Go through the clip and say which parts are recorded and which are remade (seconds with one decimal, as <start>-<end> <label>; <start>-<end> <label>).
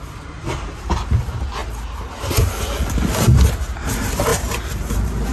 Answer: 0.0-4.3 recorded; 4.3-5.3 remade